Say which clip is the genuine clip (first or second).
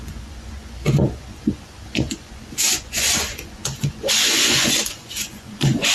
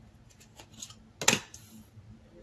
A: second